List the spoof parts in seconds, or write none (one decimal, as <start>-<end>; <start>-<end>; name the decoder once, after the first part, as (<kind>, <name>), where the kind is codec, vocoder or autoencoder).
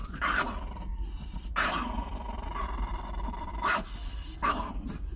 3.5-4.7 (autoencoder, DAC-VAE)